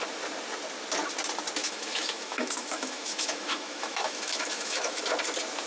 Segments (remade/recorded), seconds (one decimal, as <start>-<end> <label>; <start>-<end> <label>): 0.0-1.6 recorded; 1.6-5.0 remade; 5.0-5.7 recorded